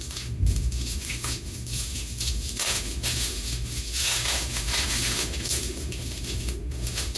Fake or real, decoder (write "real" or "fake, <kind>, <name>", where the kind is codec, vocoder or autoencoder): fake, autoencoder, DAC-VAE